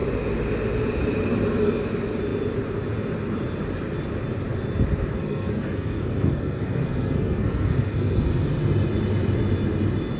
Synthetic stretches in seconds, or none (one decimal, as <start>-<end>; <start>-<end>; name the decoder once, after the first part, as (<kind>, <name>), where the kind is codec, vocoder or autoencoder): 5.2-8.5 (codec, SNAC)